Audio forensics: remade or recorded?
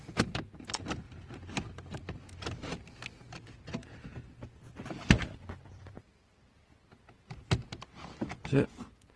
recorded